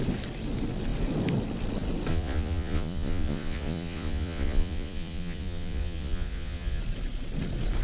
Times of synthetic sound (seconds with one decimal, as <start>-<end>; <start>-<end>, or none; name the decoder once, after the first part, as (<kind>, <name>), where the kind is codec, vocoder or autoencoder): 2.1-6.8 (vocoder, Vocos)